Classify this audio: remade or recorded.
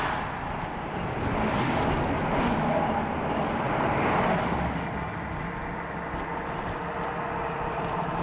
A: recorded